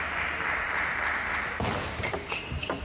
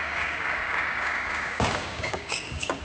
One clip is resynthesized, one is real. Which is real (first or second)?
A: first